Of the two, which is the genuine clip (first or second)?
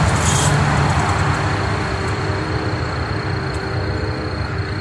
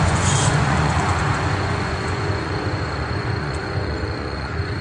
first